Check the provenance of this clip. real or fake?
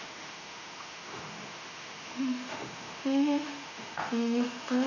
fake